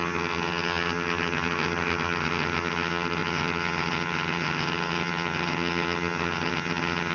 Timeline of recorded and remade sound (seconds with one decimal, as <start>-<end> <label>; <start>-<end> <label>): 0.0-7.1 remade